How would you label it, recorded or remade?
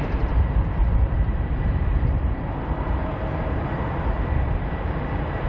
remade